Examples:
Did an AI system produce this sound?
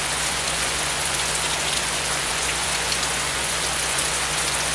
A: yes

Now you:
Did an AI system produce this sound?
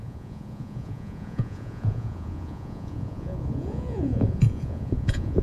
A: yes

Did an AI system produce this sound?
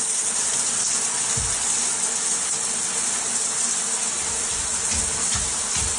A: no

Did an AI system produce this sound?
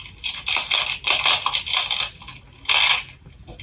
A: no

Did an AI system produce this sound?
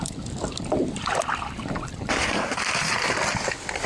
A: no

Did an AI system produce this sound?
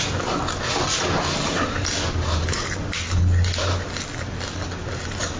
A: no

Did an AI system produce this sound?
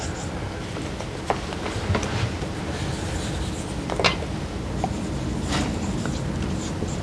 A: no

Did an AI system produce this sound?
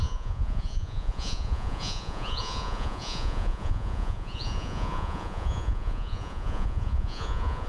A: yes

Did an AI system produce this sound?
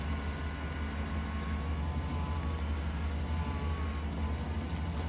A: no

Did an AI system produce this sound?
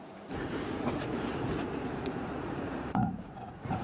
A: yes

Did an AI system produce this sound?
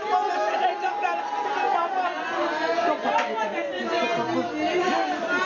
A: no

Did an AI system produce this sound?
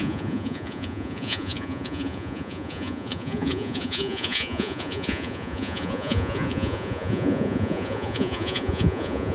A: yes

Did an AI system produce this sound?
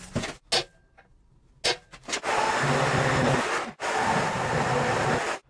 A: no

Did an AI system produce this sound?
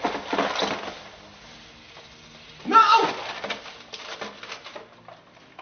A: no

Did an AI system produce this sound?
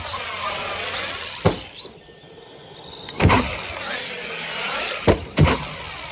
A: no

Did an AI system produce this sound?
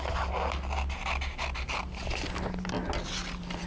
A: no